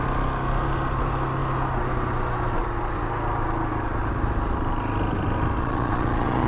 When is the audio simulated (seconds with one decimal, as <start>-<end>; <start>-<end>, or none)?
5.6-6.5